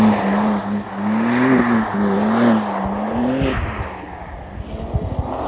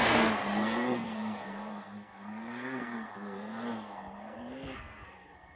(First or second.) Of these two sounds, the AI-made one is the second